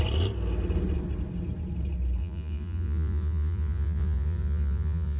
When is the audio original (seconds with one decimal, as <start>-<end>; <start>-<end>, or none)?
0.0-2.2